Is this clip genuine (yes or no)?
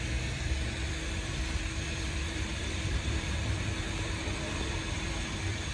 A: no